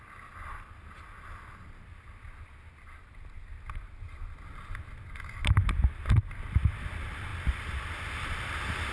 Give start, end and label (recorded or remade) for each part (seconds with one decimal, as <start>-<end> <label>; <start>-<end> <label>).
0.0-8.9 recorded